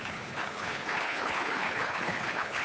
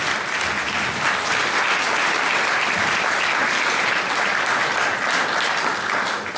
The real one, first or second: second